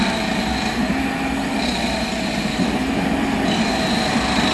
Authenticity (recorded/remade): recorded